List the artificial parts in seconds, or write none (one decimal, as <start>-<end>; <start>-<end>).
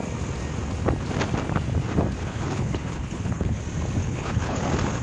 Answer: 2.2-3.6; 4.0-4.6